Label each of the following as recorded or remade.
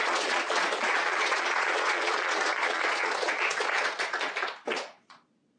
remade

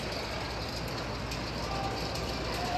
recorded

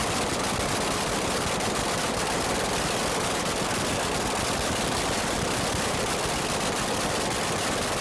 recorded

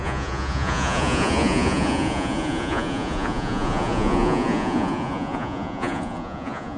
remade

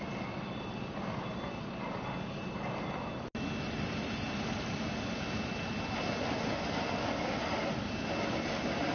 recorded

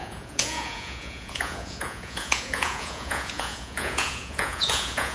remade